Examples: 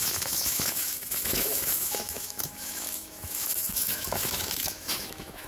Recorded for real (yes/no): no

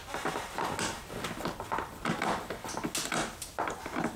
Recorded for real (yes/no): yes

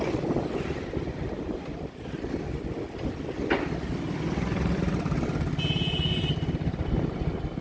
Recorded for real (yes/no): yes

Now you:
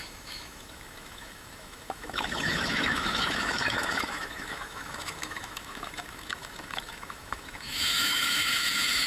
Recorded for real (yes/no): no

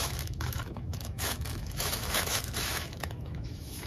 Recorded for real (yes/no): no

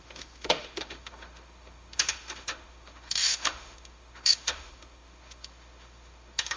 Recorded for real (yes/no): no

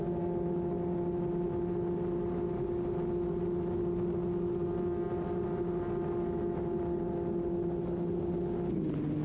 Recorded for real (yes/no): yes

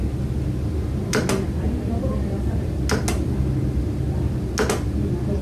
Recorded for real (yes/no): yes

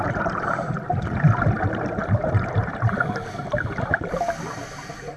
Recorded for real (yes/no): yes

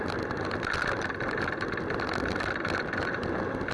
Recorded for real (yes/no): yes